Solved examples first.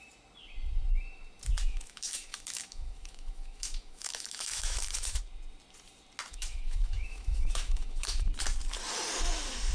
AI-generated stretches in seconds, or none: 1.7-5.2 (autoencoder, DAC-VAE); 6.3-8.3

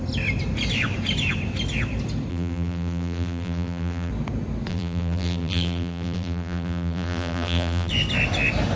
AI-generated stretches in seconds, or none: 2.3-4.1 (vocoder, BigVGAN v2); 4.7-7.9

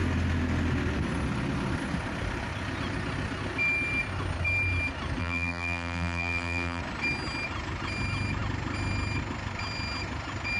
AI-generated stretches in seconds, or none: 5.2-6.8 (vocoder, BigVGAN v2)

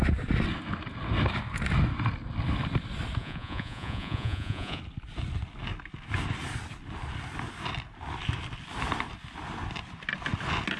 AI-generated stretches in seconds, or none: 3.2-4.8 (vocoder, Vocos)

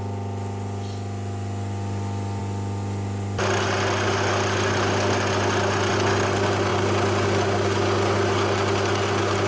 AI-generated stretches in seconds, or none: none